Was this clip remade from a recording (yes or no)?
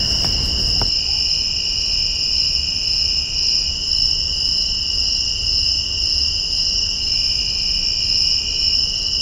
no